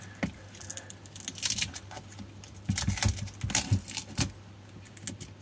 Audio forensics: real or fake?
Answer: real